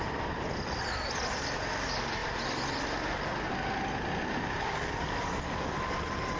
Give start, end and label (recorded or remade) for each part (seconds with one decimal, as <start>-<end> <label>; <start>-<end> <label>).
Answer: 0.0-6.4 recorded